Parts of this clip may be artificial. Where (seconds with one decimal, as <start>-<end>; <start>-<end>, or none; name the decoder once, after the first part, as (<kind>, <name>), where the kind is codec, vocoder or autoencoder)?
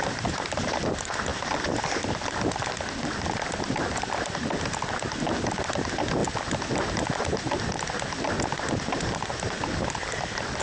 0.0-6.2 (vocoder, BigVGAN v2); 8.4-10.6